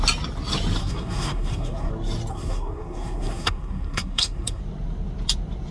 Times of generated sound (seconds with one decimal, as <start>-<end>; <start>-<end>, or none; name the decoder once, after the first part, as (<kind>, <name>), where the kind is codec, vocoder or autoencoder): 0.8-1.9 (codec, SNAC); 2.3-4.6